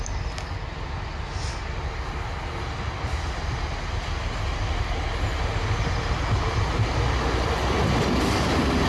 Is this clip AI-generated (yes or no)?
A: no